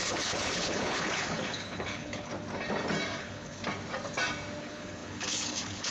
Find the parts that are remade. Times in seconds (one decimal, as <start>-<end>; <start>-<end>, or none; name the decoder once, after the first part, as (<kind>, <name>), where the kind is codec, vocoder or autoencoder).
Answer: 0.0-2.3 (codec, HILCodec); 3.2-3.6; 4.6-5.9